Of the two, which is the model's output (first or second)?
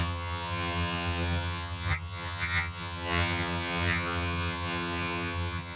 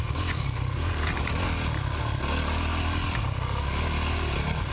first